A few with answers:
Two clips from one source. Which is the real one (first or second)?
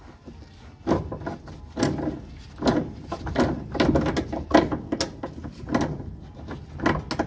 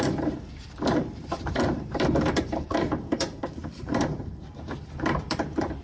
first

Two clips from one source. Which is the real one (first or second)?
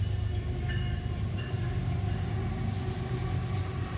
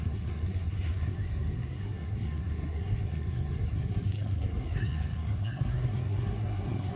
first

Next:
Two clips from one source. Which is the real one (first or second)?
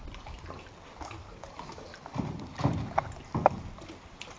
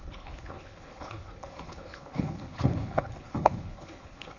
first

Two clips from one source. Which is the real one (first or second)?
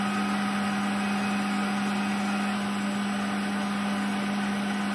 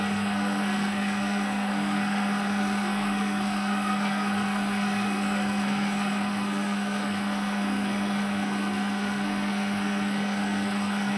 first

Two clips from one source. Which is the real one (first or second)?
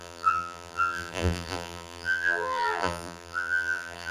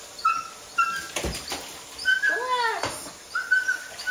second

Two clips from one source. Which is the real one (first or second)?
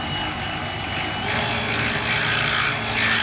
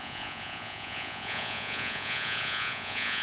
first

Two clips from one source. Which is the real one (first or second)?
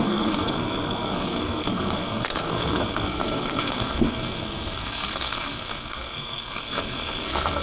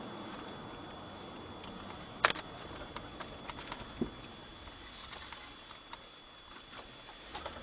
second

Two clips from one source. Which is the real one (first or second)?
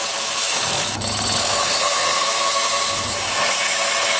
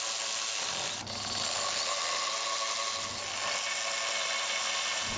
second